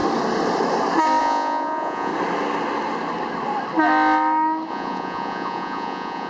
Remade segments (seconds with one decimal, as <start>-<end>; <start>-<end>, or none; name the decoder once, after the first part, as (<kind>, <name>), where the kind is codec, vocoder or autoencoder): 1.2-2.1 (vocoder, Vocos); 4.7-6.3